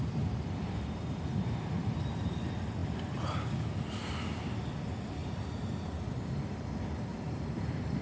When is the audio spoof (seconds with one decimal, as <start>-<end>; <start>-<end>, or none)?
7.1-8.0

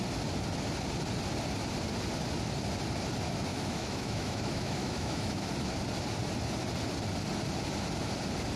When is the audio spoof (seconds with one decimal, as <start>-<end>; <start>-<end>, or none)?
3.5-5.5

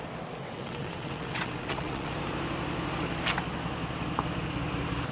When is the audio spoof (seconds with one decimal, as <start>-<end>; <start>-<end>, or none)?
0.4-2.1